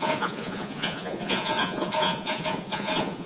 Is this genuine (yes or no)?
no